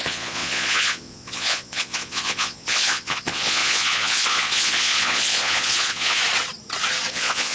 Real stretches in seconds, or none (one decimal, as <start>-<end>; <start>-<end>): 6.2-7.1

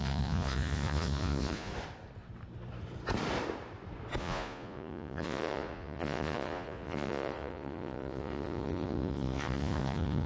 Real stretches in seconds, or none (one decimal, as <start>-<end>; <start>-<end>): 1.7-4.2

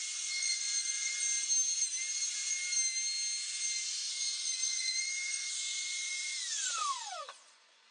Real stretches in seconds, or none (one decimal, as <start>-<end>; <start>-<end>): 1.1-4.1

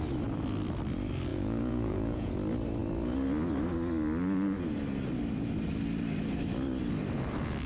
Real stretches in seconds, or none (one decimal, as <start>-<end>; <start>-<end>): 0.0-1.3; 2.3-7.7